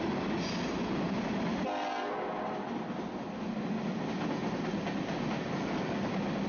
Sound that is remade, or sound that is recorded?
recorded